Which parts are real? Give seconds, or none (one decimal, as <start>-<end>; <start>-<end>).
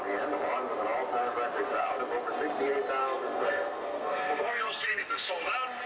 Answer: 0.0-3.0; 5.3-5.9